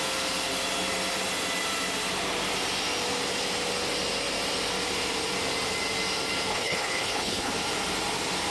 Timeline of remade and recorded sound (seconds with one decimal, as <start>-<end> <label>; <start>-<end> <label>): 0.0-6.5 recorded; 6.5-7.5 remade; 7.5-8.5 recorded